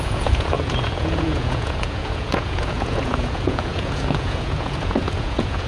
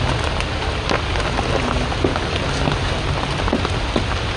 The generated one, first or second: first